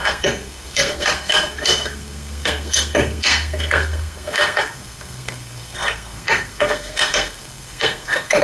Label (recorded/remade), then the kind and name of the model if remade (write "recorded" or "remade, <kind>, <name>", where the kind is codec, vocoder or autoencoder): remade, codec, SNAC